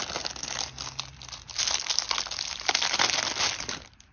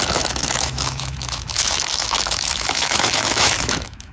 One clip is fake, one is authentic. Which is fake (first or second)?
second